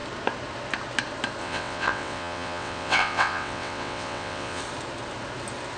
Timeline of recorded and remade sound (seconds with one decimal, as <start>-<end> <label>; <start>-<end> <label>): 0.0-1.4 recorded; 1.4-4.6 remade; 4.6-5.8 recorded